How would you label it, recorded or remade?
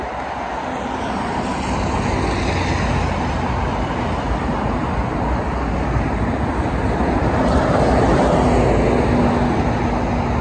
recorded